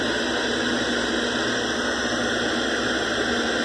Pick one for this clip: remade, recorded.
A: recorded